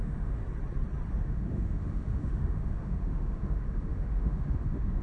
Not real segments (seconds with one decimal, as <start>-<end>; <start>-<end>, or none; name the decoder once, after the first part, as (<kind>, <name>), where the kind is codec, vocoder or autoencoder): 0.0-0.4 (autoencoder, DAC-VAE); 1.2-5.0